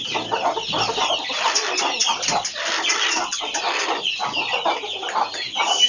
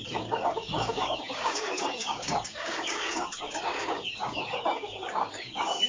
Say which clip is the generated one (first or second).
second